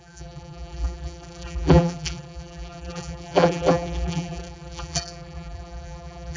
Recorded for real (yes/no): no